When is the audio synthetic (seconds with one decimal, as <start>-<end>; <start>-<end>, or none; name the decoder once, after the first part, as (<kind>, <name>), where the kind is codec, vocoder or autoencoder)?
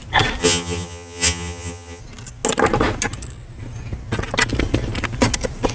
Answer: 0.4-2.0 (vocoder, HiFi-GAN)